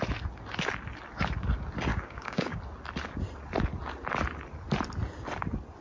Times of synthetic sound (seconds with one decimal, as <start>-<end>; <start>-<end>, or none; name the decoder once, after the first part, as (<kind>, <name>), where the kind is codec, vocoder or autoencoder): 1.9-2.6 (codec, DAC)